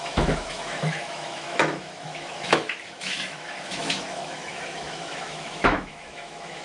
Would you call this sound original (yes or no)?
no